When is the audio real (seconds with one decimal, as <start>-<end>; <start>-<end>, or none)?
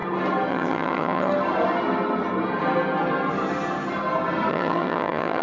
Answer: 0.0-0.5; 1.3-4.5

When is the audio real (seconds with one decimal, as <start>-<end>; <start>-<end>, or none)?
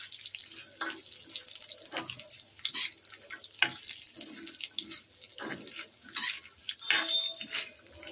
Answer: 0.0-8.1